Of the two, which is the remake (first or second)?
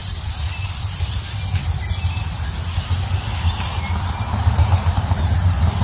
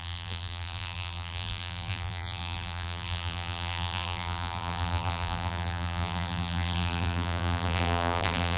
second